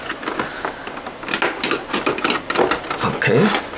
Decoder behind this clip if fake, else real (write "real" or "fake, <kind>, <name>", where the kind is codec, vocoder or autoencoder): real